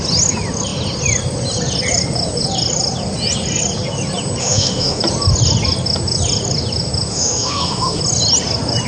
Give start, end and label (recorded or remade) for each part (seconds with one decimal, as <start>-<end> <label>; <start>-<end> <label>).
0.0-4.4 recorded; 4.4-5.0 remade; 5.0-7.1 recorded; 7.1-8.0 remade; 8.0-8.9 recorded